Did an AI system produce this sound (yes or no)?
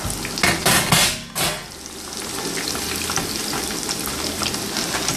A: no